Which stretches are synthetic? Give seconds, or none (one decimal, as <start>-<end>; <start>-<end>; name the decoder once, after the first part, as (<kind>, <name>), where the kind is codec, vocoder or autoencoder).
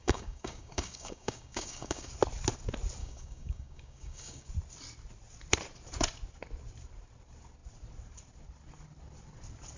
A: 0.0-2.1 (codec, DAC); 3.0-4.5